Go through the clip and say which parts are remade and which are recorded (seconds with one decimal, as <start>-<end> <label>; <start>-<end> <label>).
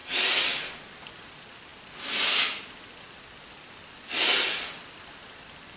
0.0-5.8 recorded